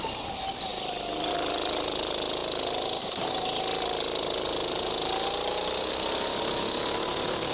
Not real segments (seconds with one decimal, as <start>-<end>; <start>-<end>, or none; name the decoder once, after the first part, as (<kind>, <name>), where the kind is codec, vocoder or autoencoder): none